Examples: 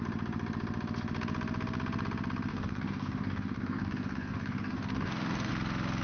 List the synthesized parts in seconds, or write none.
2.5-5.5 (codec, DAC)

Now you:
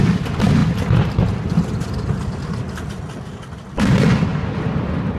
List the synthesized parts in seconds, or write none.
none